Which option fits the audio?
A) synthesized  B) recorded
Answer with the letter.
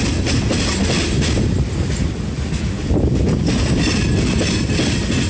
B